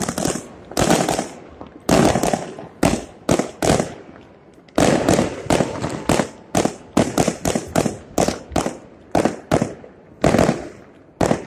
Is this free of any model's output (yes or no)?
yes